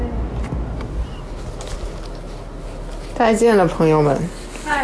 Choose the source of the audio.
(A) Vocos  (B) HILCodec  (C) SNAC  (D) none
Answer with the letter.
D